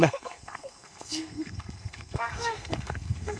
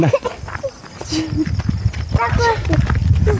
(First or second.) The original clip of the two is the second